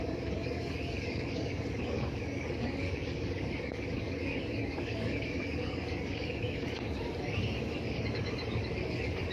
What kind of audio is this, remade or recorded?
remade